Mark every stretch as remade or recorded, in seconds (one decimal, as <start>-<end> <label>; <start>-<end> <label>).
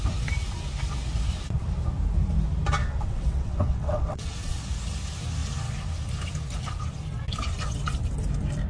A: 0.0-2.8 recorded; 2.8-4.6 remade; 4.6-8.7 recorded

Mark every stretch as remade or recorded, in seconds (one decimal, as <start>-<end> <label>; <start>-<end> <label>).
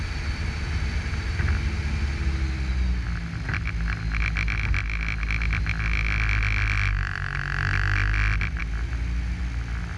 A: 0.0-10.0 recorded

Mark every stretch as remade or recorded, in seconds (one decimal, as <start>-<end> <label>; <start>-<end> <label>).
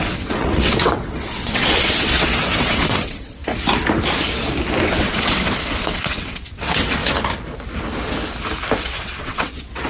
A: 0.0-3.4 remade; 3.4-4.8 recorded; 4.8-7.0 remade; 7.0-8.8 recorded; 8.8-9.9 remade